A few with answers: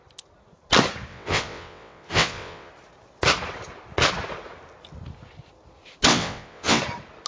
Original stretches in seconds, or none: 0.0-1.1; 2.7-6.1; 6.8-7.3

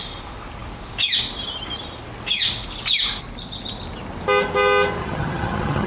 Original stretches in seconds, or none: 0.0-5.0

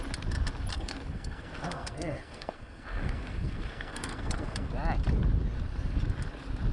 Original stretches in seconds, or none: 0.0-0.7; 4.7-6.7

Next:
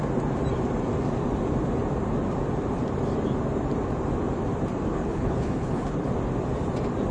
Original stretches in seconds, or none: 0.0-4.9; 6.1-7.1

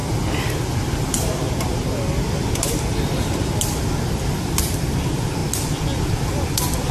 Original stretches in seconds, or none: 0.0-4.1; 5.4-6.0